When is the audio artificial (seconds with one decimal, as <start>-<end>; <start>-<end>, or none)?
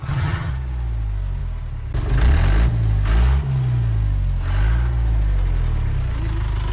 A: 0.0-0.5